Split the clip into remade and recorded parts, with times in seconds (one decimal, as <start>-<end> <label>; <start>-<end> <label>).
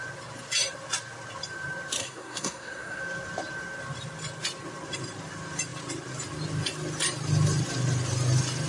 0.0-2.0 recorded; 2.0-3.0 remade; 3.0-8.7 recorded